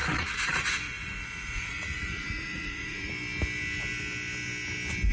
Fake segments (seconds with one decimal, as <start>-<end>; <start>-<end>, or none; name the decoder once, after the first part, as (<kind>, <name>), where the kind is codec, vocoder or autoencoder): 0.0-3.1 (vocoder, Vocos)